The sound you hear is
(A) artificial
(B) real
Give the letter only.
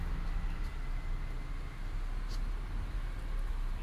B